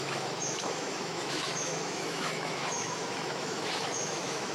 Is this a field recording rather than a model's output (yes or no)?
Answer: no